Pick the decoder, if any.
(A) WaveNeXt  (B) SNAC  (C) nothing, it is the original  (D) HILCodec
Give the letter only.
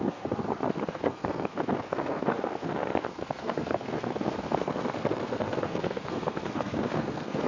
B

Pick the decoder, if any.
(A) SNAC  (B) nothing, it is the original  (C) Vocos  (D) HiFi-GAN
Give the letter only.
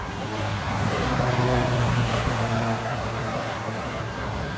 A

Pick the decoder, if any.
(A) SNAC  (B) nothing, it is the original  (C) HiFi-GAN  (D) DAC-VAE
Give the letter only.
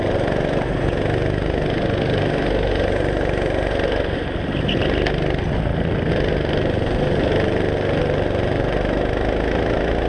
B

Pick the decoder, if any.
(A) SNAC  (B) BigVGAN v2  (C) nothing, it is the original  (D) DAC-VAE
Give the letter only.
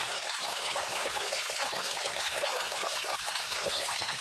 A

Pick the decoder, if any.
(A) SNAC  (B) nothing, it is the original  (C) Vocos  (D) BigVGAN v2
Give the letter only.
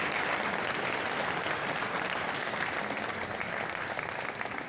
B